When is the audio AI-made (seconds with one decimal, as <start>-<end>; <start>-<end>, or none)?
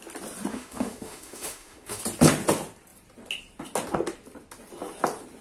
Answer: 0.5-2.0